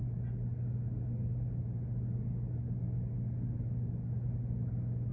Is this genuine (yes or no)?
yes